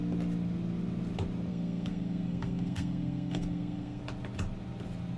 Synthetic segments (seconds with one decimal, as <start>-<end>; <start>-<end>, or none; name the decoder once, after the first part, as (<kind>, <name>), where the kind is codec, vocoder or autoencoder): 1.5-4.0 (codec, SNAC)